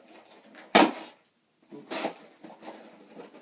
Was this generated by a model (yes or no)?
no